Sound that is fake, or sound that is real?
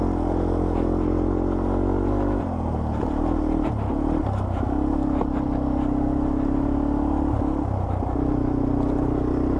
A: real